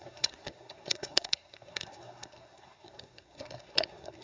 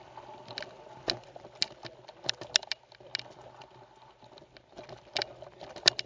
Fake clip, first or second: first